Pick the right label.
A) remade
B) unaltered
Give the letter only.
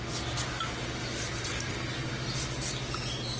B